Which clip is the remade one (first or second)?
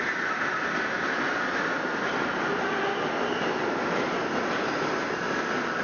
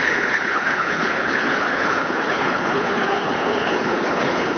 second